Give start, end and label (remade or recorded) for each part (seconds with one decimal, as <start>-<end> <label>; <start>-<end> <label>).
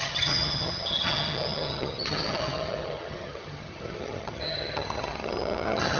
0.0-6.0 remade